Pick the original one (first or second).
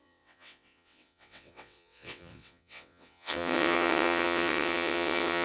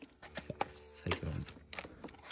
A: second